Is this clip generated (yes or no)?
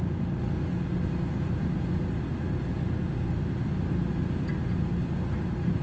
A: no